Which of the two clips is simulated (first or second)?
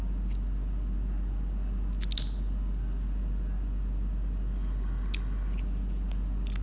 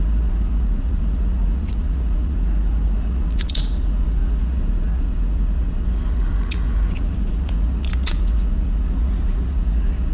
second